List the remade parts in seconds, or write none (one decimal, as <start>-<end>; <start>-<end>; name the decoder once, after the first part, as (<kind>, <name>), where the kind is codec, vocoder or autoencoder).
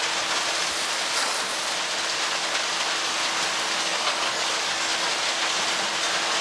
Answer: 3.8-4.9 (codec, DAC)